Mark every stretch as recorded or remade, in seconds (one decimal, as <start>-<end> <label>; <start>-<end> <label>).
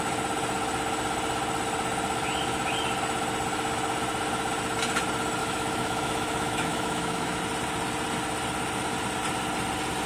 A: 0.0-5.4 recorded; 5.4-7.4 remade; 7.4-10.1 recorded